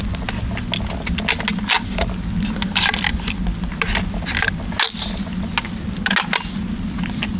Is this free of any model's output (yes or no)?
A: yes